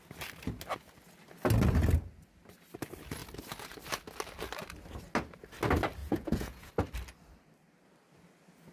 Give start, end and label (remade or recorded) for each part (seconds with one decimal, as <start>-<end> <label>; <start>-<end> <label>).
0.0-6.0 recorded; 6.0-6.7 remade; 6.7-8.7 recorded